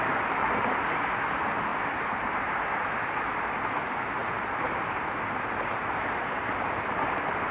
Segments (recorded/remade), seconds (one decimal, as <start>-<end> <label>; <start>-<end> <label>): 0.0-1.7 recorded; 1.7-3.5 remade; 3.5-4.2 recorded; 4.2-7.5 remade